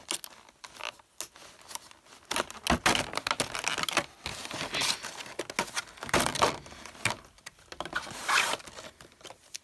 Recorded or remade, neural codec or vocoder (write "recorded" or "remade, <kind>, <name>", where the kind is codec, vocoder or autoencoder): recorded